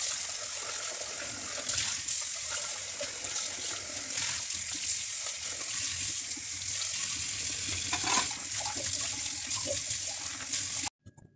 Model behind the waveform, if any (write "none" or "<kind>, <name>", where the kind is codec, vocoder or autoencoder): none